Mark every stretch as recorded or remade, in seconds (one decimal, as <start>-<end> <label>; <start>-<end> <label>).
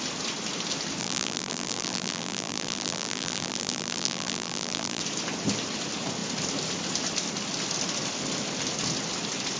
0.0-1.0 recorded; 1.0-5.0 remade; 5.0-9.6 recorded